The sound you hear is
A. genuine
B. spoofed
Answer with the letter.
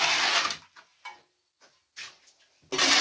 A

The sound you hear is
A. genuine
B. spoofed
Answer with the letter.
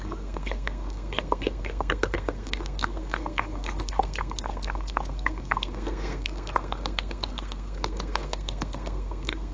B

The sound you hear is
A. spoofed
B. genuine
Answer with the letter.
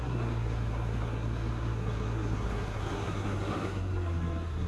A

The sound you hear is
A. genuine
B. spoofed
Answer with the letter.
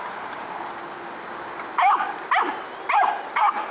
A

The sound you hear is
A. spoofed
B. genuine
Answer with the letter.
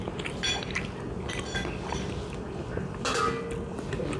B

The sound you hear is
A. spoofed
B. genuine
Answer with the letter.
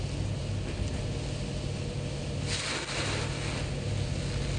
B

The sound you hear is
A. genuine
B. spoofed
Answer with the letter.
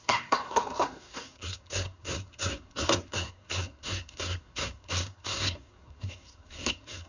B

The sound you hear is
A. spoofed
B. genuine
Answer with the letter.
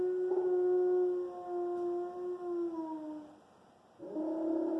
B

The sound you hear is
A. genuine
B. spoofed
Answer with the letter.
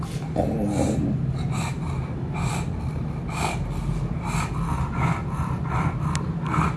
A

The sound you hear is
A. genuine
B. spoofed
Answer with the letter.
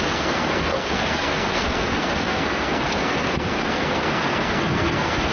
B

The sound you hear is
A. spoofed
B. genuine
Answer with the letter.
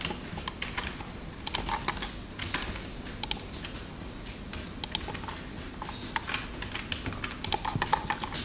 B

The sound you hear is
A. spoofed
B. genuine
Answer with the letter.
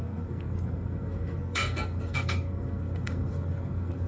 A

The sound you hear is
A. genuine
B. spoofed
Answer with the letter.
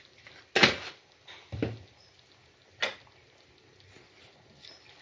A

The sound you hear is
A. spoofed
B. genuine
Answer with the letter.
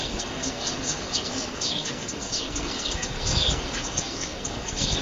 A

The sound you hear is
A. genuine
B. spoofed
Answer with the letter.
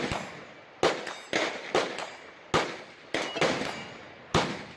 A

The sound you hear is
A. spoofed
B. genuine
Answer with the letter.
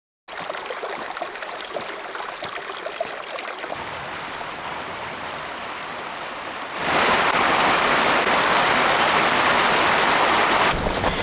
B